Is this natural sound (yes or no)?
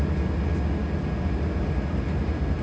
yes